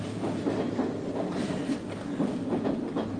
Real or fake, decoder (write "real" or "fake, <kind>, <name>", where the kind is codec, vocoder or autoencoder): real